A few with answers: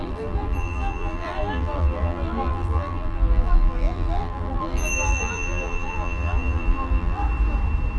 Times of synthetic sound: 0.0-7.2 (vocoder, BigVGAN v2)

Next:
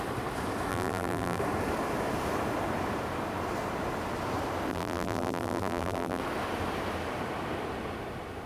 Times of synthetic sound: 0.7-1.4 (vocoder, BigVGAN v2); 4.7-6.2

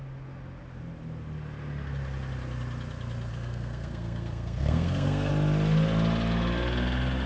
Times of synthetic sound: 3.3-5.3 (codec, SNAC)

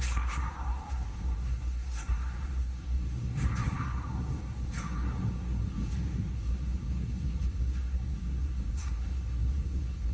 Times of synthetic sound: 0.0-10.1 (codec, SNAC)

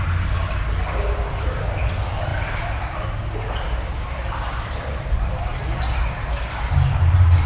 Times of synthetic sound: none

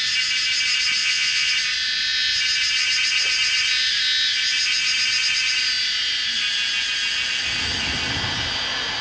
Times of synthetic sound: 1.0-1.5 (vocoder, Vocos)

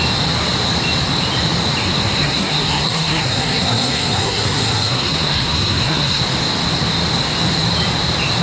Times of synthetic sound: 1.8-6.2 (codec, SNAC)